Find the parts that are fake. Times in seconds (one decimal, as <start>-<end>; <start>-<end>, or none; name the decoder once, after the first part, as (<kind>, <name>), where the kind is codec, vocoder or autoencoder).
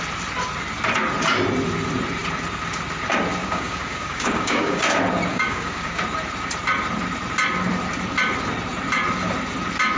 3.4-4.8 (codec, DAC); 5.3-6.0